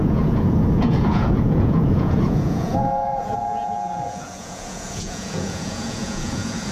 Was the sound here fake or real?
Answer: fake